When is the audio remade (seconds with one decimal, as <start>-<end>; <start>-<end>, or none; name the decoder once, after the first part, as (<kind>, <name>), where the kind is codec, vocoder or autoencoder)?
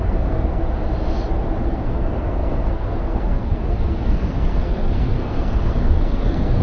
0.0-0.6 (codec, SNAC); 1.6-6.6